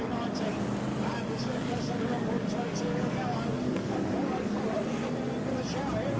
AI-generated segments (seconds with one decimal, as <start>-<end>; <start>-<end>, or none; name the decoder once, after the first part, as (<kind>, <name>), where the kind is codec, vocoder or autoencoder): 0.9-4.6 (codec, DAC)